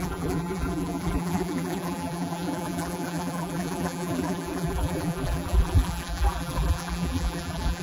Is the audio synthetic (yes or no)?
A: yes